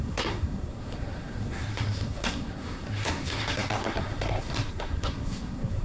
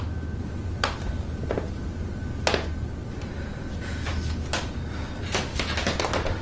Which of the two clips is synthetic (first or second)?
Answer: first